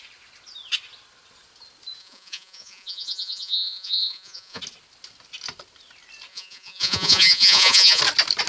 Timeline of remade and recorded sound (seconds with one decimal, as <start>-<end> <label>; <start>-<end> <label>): 0.0-2.0 recorded; 2.0-4.6 remade; 4.6-6.3 recorded; 6.3-8.0 remade; 8.0-8.5 recorded